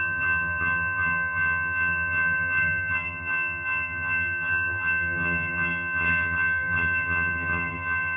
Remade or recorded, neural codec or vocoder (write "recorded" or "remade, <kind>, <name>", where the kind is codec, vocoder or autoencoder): remade, vocoder, HiFi-GAN